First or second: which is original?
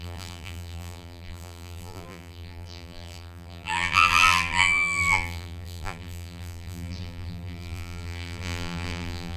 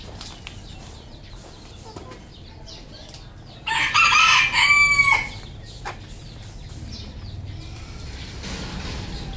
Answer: second